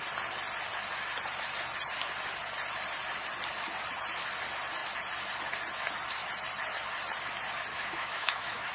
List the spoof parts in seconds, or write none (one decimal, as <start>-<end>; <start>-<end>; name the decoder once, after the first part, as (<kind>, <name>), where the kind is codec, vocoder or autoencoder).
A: 7.7-8.7 (autoencoder, DAC-VAE)